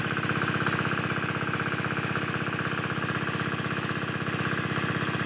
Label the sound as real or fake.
real